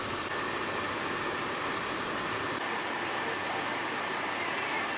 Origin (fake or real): fake